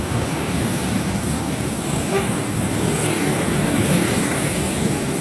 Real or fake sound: fake